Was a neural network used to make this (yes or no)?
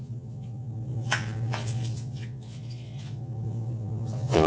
yes